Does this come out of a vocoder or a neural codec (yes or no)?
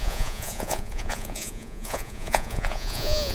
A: yes